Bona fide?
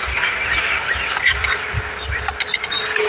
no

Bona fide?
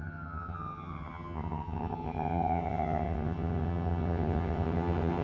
no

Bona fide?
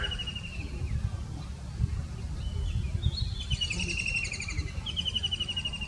yes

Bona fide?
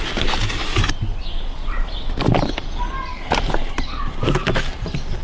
yes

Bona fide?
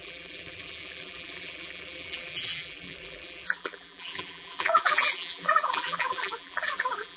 no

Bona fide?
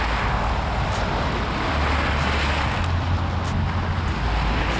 yes